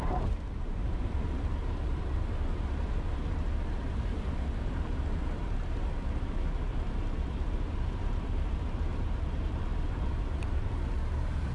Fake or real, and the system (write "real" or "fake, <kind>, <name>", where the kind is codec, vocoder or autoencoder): fake, vocoder, BigVGAN v2